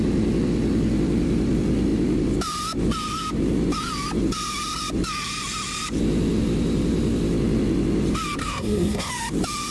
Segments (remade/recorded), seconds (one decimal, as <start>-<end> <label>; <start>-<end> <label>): 0.0-8.4 recorded; 8.4-9.1 remade; 9.1-9.7 recorded